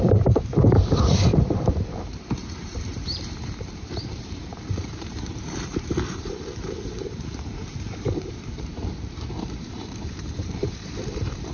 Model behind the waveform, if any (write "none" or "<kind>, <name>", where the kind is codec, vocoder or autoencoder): vocoder, BigVGAN v2